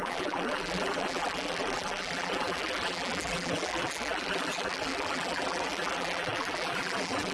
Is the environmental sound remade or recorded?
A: remade